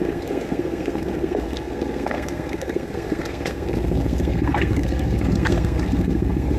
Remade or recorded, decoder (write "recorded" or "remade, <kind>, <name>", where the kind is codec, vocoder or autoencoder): remade, codec, SNAC